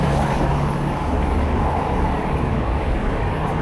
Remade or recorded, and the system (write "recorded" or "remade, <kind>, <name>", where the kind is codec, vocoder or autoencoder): remade, codec, DAC